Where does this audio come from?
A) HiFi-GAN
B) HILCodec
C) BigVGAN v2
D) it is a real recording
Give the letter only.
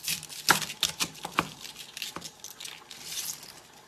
D